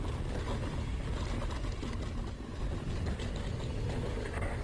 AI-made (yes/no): no